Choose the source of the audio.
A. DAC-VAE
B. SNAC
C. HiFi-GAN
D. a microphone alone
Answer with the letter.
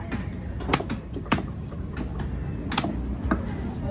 D